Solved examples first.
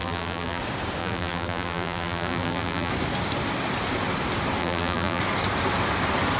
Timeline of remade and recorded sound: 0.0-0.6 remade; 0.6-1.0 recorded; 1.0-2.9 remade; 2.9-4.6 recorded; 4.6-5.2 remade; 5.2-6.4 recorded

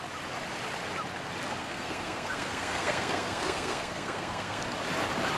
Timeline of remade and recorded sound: 0.0-1.6 recorded; 1.6-4.6 remade; 4.6-5.4 recorded

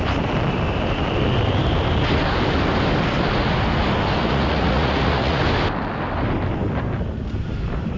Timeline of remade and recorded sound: 0.0-4.2 recorded; 4.2-5.4 remade; 5.4-8.0 recorded

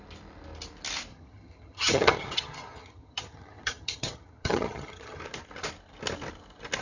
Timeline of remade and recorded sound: 0.0-1.1 recorded; 1.1-5.2 remade; 5.2-6.8 recorded

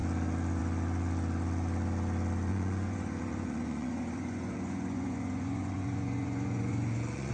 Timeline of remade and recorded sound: 0.0-2.5 recorded; 2.5-7.3 remade

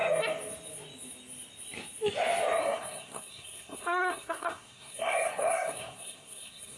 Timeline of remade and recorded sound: 0.0-2.6 recorded; 2.6-6.8 remade

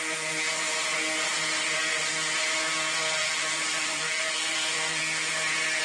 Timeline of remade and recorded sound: 0.0-3.2 recorded; 3.2-5.0 remade; 5.0-5.8 recorded